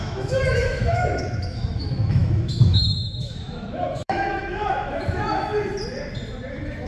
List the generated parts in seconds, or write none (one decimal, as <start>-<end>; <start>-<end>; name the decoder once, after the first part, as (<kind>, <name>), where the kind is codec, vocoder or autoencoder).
0.0-5.5 (autoencoder, DAC-VAE); 6.5-6.9